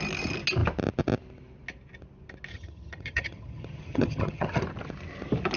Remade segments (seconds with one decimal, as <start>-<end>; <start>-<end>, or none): 2.5-4.6